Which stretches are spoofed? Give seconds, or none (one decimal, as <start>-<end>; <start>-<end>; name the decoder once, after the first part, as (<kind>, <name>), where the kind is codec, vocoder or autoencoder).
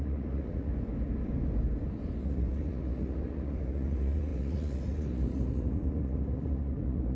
0.0-0.7 (vocoder, Vocos); 2.2-7.2